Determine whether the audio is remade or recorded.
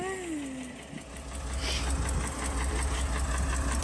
recorded